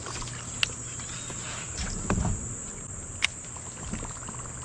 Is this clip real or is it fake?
real